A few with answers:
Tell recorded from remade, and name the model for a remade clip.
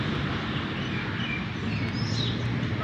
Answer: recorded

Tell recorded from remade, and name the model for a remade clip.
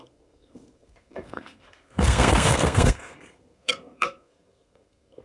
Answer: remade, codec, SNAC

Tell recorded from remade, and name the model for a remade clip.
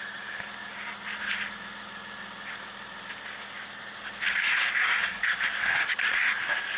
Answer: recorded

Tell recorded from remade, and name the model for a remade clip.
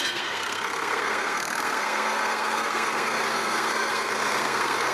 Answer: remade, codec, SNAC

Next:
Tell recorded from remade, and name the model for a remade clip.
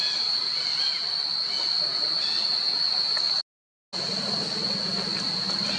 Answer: recorded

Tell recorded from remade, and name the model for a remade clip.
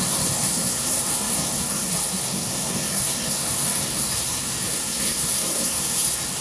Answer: remade, codec, SNAC